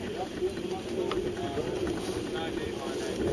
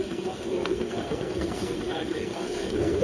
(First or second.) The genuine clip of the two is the first